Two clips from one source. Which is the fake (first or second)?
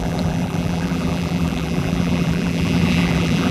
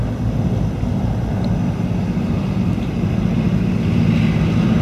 first